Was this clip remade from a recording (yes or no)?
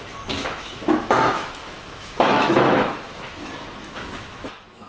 yes